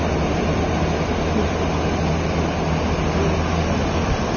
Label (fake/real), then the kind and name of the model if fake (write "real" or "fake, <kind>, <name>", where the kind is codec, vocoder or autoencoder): real